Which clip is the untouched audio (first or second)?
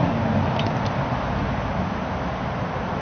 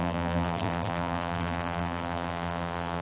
first